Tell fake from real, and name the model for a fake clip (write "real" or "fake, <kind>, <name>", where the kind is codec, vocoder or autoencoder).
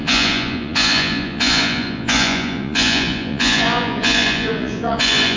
fake, vocoder, Vocos